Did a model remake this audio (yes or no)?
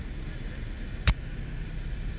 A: no